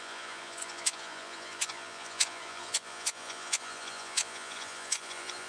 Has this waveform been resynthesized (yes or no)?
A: yes